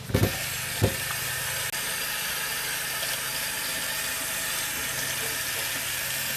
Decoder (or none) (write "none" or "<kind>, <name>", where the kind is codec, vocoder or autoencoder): none